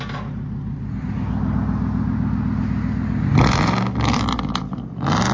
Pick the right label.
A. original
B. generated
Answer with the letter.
A